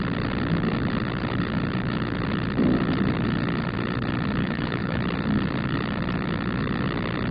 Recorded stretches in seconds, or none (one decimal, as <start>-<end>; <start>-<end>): 0.0-4.4; 5.0-7.3